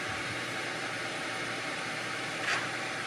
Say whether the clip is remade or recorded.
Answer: remade